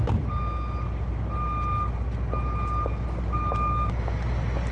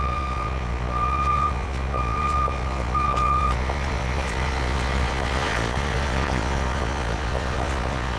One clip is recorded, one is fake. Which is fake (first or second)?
second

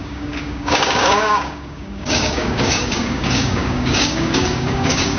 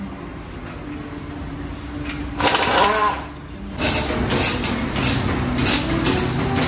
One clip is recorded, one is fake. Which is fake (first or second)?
first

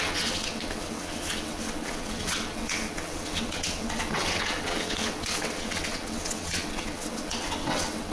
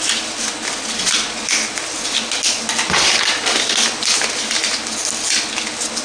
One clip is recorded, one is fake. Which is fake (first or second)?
first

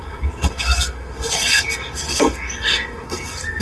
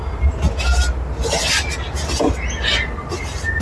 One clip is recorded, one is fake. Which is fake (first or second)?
first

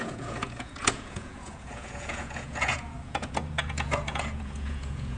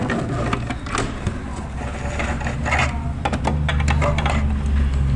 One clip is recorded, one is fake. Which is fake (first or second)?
first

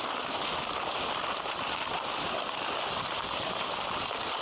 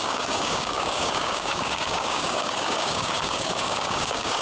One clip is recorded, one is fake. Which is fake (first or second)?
second